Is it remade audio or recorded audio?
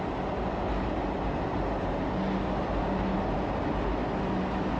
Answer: recorded